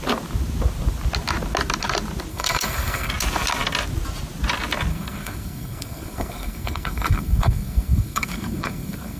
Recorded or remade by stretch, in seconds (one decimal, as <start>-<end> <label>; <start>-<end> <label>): 0.0-2.3 recorded; 2.3-3.1 remade; 3.1-4.9 recorded; 4.9-9.2 remade